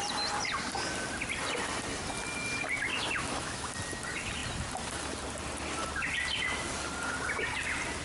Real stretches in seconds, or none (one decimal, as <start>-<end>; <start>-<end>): 0.0-2.9; 3.7-8.0